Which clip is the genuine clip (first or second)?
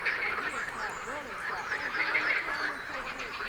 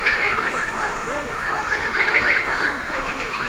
first